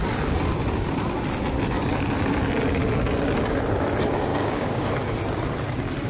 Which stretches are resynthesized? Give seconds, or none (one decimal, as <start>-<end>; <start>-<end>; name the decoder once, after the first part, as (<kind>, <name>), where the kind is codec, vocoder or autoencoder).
4.3-4.9 (codec, DAC)